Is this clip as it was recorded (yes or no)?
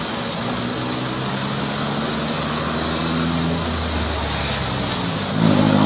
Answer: yes